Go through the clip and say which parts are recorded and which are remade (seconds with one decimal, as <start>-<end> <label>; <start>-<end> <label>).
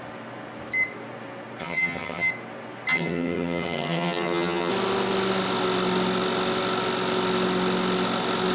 0.0-1.6 recorded; 1.6-2.3 remade; 2.3-2.9 recorded; 2.9-4.7 remade; 4.7-8.5 recorded